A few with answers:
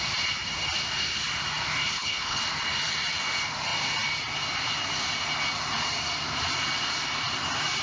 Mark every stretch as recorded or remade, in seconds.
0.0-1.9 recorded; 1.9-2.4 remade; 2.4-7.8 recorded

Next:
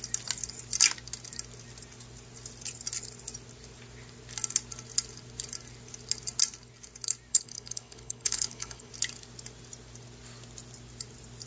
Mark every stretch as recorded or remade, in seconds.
0.0-7.3 recorded; 7.3-8.9 remade; 8.9-11.5 recorded

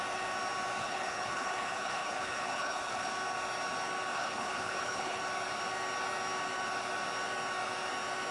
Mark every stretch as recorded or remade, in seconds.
0.0-0.8 recorded; 0.8-3.1 remade; 3.1-4.1 recorded; 4.1-5.2 remade; 5.2-8.3 recorded

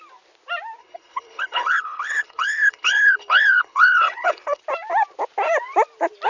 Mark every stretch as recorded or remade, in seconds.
0.0-0.8 recorded; 0.8-4.6 remade; 4.6-6.3 recorded

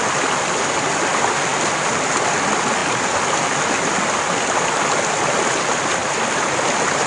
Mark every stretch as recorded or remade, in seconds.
0.0-7.1 recorded

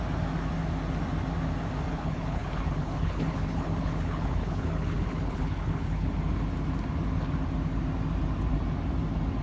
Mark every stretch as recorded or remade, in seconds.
0.0-1.9 recorded; 1.9-6.1 remade; 6.1-9.4 recorded

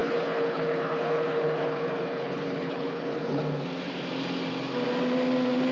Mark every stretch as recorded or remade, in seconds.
0.0-3.4 remade; 3.4-5.7 recorded